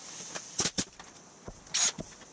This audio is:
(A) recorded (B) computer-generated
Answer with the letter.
A